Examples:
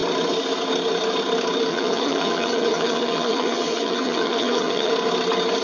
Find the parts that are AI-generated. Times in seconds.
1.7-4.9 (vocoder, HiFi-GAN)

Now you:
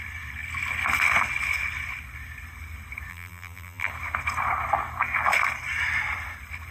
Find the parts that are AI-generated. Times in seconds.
3.1-3.9 (vocoder, BigVGAN v2)

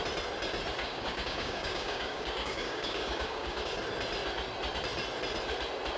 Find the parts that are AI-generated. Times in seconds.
0.8-3.8 (codec, DAC)